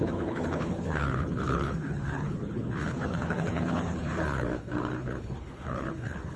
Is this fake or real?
fake